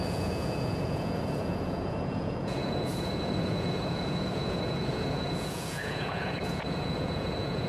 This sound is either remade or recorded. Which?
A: remade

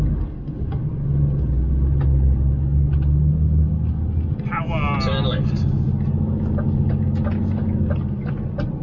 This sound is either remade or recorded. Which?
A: recorded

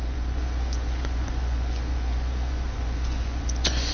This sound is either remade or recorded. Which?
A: remade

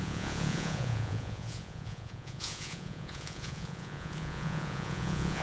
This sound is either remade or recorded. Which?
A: remade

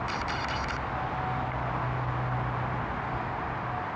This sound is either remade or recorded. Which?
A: recorded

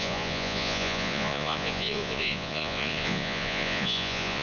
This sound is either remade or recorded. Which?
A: remade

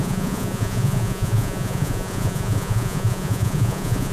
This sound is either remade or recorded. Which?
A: remade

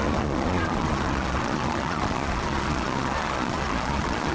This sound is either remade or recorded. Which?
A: remade